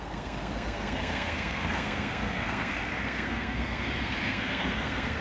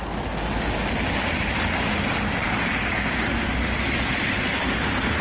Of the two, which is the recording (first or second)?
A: second